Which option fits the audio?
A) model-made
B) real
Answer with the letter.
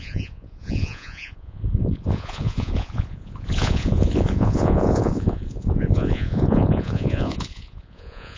A